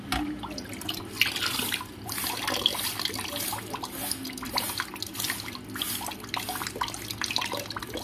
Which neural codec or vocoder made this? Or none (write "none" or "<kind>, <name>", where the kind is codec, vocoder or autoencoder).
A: none